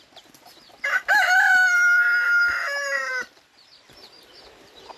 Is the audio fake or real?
fake